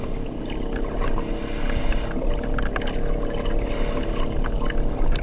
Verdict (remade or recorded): recorded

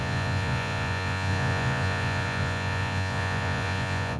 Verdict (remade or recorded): remade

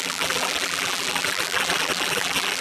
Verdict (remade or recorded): remade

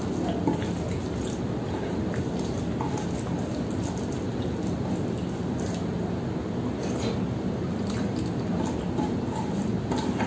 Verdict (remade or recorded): recorded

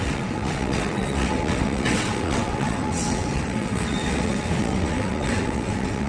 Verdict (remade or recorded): remade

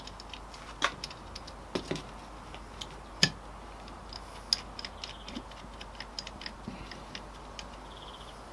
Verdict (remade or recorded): recorded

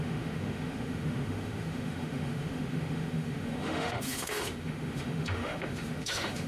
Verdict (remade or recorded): remade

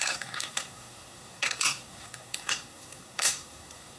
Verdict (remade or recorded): remade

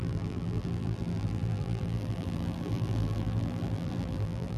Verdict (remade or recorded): remade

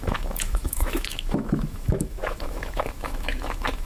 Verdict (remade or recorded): remade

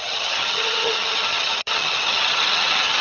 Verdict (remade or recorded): remade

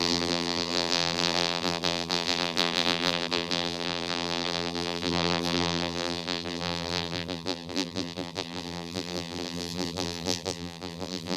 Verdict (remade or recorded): remade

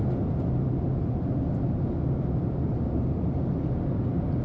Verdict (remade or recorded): recorded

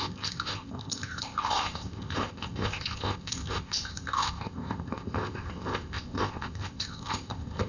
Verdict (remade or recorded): remade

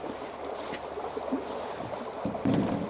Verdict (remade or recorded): recorded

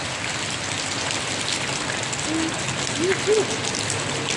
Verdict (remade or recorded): recorded